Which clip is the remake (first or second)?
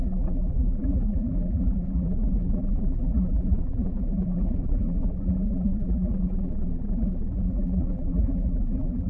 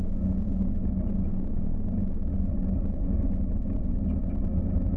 first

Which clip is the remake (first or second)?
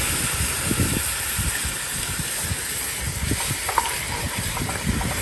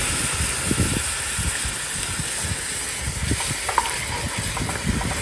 first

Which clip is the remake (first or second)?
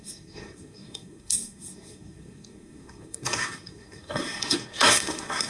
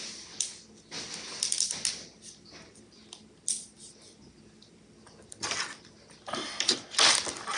first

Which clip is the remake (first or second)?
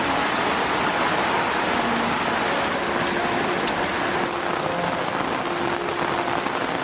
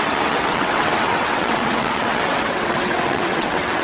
second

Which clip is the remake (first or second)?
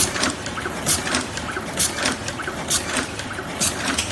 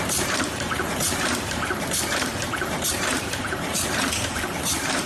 second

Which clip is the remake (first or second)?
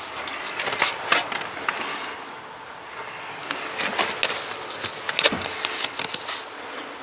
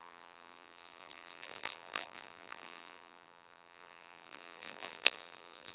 second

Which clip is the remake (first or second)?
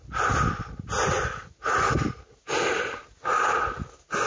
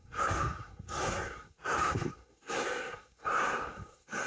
second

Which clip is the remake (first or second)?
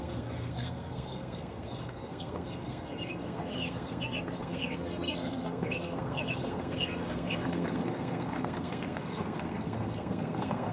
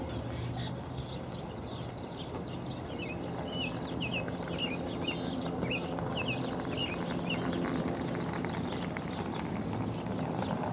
first